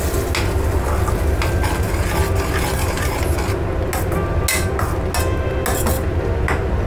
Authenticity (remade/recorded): recorded